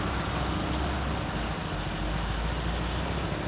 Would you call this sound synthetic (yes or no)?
no